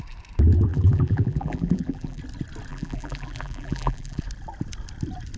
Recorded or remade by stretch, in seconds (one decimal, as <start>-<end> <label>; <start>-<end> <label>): 0.0-0.7 recorded; 0.7-2.2 remade; 2.2-2.7 recorded; 2.7-4.2 remade; 4.2-5.4 recorded

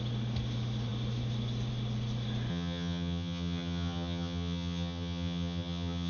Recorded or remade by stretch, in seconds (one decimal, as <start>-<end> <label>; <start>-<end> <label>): 0.0-2.5 recorded; 2.5-6.1 remade

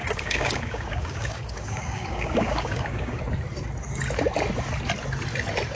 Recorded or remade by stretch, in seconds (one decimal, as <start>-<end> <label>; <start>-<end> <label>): 0.0-3.2 remade; 3.2-5.8 recorded

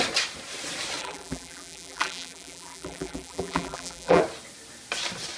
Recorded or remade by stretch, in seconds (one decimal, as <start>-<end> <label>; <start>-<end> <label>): 0.0-1.0 recorded; 1.0-4.2 remade; 4.2-5.4 recorded

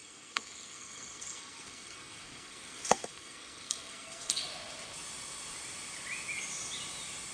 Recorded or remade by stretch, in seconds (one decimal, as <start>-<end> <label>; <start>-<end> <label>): 0.0-4.4 remade; 4.4-7.3 recorded